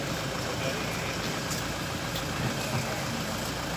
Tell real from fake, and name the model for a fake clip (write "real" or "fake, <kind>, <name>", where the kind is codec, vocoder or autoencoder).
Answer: real